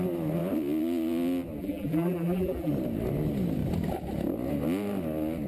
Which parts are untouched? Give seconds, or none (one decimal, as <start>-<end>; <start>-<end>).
0.0-1.6; 2.7-5.5